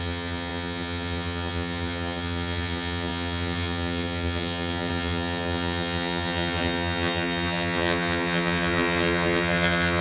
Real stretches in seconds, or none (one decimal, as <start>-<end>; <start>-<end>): none